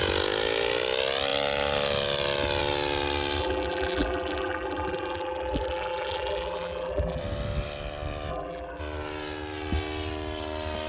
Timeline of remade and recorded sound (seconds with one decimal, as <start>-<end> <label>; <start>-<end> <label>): 0.0-3.4 recorded; 3.4-7.2 remade; 7.2-8.3 recorded; 8.3-8.8 remade; 8.8-10.9 recorded